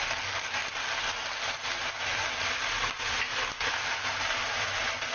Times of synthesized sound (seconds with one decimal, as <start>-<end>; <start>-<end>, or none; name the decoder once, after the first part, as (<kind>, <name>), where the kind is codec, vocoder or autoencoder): 0.0-0.6 (vocoder, BigVGAN v2); 3.7-5.1